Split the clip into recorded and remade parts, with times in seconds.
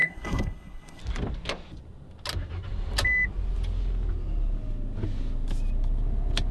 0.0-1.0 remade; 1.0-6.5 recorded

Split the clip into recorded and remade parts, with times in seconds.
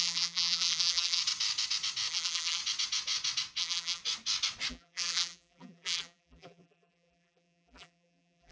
0.0-1.2 remade; 1.2-2.1 recorded; 2.1-2.6 remade; 2.6-3.6 recorded; 3.6-4.0 remade; 4.0-4.7 recorded; 4.7-8.5 remade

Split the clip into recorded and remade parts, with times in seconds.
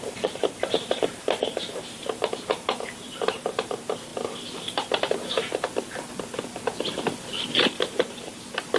0.0-4.1 remade; 4.1-7.5 recorded; 7.5-8.8 remade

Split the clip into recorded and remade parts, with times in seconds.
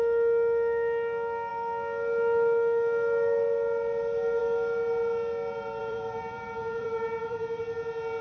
0.0-5.8 recorded; 5.8-7.6 remade; 7.6-8.2 recorded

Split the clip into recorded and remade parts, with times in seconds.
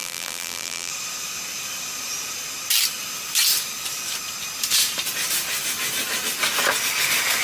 0.0-0.9 remade; 0.9-7.4 recorded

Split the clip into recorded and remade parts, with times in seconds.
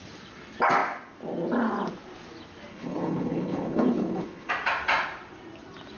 0.0-2.7 recorded; 2.7-4.5 remade; 4.5-6.0 recorded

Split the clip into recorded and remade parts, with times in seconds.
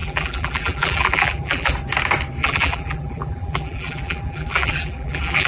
0.0-1.7 remade; 1.7-2.4 recorded; 2.4-5.5 remade